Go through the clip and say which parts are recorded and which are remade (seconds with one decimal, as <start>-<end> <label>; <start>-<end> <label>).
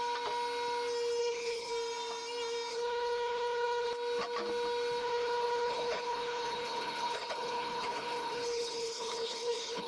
0.0-1.2 recorded; 1.2-1.7 remade; 1.7-2.7 recorded; 2.7-3.9 remade; 3.9-5.0 recorded; 5.0-9.9 remade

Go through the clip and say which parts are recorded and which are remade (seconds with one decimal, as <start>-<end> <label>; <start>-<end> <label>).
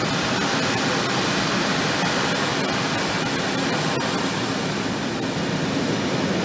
0.0-6.4 recorded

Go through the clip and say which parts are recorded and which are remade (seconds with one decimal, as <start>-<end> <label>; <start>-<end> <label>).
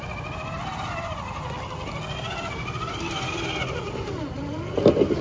0.0-5.2 recorded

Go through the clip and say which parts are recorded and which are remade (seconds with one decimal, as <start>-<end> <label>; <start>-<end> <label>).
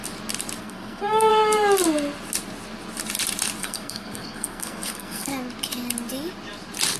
0.0-0.6 recorded; 0.6-1.3 remade; 1.3-3.6 recorded; 3.6-5.3 remade; 5.3-7.0 recorded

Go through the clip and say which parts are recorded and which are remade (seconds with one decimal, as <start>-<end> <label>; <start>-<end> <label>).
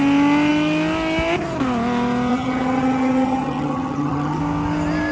0.0-2.3 recorded; 2.3-4.4 remade; 4.4-5.1 recorded